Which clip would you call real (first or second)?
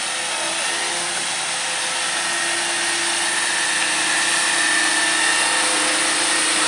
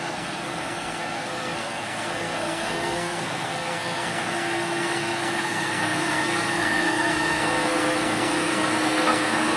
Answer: first